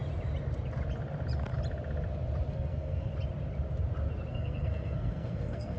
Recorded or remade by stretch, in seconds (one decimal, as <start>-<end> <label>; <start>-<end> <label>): 0.0-2.5 recorded; 2.5-3.1 remade; 3.1-4.3 recorded; 4.3-5.8 remade